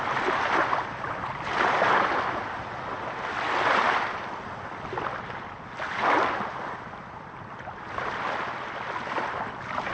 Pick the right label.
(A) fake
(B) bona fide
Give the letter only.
B